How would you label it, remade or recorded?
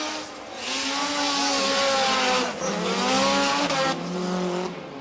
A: recorded